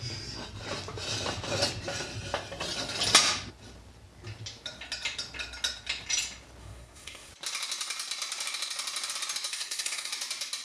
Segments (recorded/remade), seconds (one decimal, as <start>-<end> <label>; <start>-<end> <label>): 0.0-6.6 recorded; 6.6-7.3 remade; 7.3-9.5 recorded; 9.5-10.1 remade; 10.1-10.6 recorded